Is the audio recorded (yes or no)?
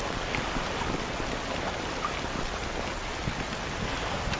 yes